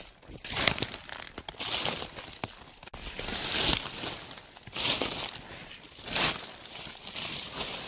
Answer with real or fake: real